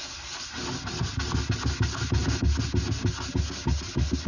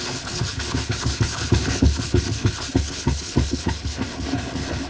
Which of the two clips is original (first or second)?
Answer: first